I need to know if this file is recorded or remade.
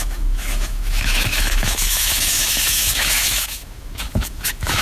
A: remade